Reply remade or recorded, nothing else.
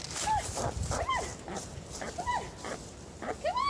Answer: recorded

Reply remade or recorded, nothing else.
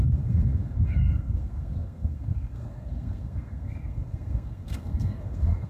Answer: remade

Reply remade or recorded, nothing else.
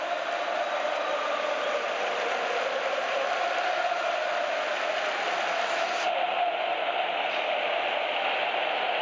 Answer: recorded